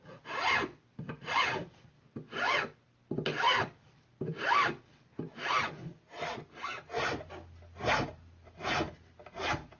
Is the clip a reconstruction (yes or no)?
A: no